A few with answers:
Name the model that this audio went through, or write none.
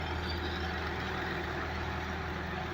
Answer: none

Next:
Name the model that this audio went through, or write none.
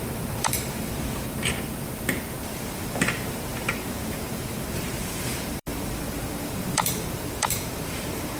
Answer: vocoder, BigVGAN v2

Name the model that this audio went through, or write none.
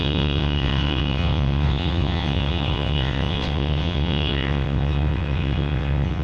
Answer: vocoder, WaveNeXt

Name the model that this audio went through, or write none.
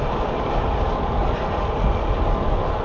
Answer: none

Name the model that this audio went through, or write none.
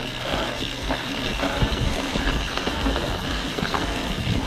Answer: codec, SNAC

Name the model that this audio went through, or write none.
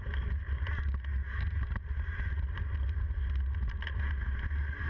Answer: none